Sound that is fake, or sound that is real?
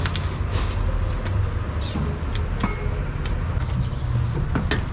real